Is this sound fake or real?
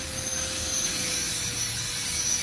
fake